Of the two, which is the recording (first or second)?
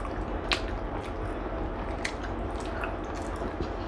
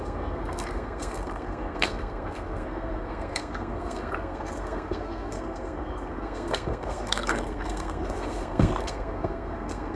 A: first